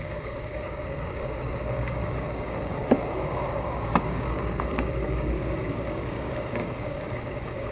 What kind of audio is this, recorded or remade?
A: remade